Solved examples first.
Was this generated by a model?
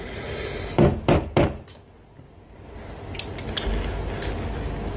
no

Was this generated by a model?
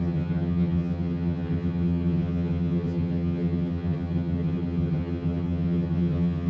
yes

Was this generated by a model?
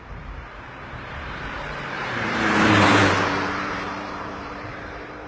yes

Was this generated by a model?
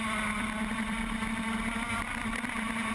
yes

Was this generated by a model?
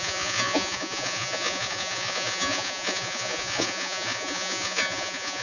yes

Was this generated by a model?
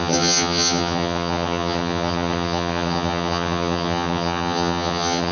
yes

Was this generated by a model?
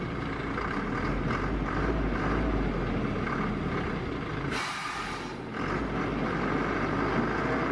no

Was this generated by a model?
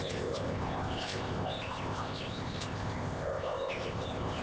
yes